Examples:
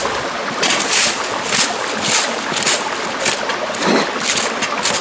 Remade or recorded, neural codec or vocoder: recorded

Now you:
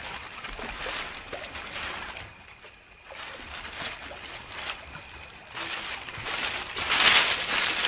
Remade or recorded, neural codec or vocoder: recorded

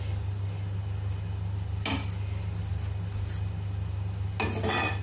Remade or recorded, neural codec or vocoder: recorded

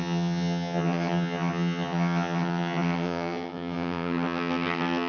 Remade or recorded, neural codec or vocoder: remade, vocoder, HiFi-GAN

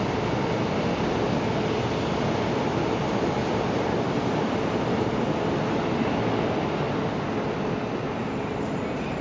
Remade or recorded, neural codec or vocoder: recorded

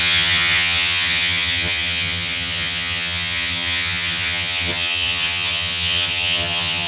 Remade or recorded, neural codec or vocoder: remade, vocoder, HiFi-GAN